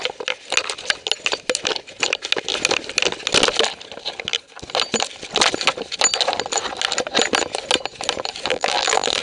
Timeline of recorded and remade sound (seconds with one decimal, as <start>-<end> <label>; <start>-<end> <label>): 0.0-8.5 recorded; 8.5-9.2 remade